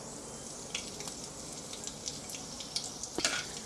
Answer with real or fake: real